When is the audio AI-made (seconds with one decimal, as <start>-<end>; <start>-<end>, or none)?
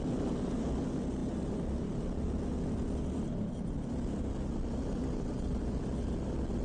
none